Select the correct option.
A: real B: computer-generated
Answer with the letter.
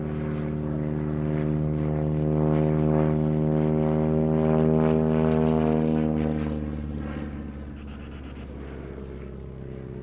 A